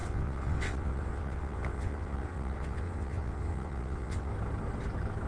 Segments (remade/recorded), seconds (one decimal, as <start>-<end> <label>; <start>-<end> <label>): 0.0-4.3 remade; 4.3-5.3 recorded